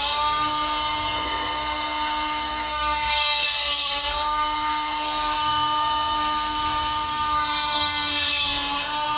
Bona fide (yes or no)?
no